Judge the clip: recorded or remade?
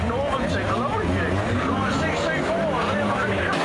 recorded